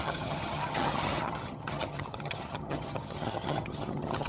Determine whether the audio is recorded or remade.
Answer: remade